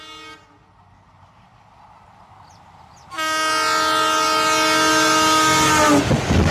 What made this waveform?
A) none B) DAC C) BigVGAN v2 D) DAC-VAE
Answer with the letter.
A